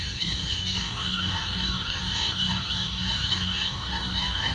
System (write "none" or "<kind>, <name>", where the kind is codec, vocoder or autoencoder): codec, DAC